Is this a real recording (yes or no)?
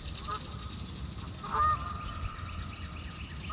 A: yes